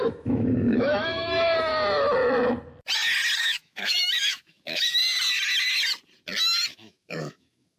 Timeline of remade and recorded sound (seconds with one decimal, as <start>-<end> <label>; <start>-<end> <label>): 0.0-1.7 remade; 1.7-3.4 recorded; 3.4-5.0 remade; 5.0-6.7 recorded; 6.7-7.8 remade